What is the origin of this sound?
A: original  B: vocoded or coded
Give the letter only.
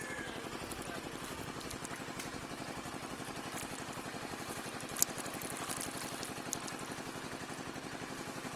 A